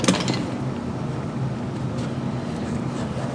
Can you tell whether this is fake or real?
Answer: real